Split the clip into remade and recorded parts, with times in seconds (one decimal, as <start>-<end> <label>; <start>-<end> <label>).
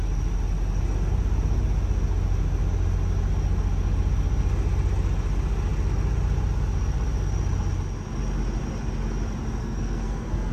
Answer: 0.0-9.6 recorded; 9.6-10.5 remade